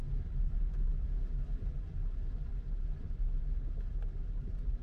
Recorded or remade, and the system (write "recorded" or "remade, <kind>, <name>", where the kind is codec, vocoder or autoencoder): recorded